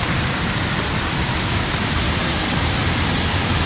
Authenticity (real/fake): fake